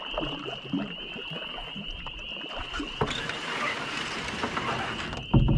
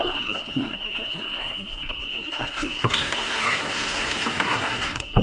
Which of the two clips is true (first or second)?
first